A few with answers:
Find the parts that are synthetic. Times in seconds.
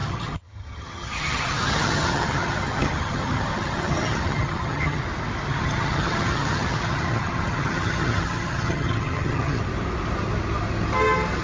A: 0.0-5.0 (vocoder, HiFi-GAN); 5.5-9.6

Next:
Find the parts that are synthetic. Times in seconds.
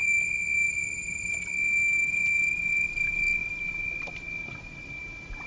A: none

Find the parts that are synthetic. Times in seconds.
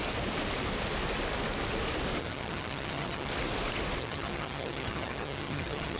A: 2.2-3.3 (vocoder, HiFi-GAN); 4.0-6.0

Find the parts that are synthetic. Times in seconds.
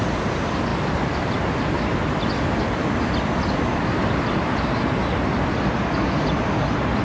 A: none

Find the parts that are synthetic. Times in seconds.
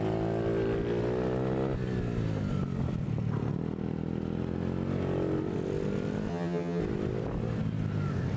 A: 6.3-6.8 (vocoder, HiFi-GAN)